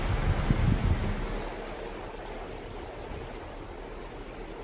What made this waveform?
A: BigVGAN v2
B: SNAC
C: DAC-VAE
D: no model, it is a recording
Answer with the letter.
D